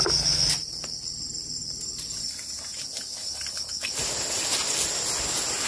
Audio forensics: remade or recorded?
recorded